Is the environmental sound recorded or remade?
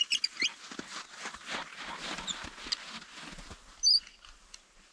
recorded